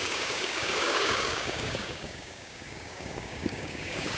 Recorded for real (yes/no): no